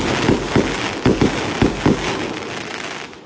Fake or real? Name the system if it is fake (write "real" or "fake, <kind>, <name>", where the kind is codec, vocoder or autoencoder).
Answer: real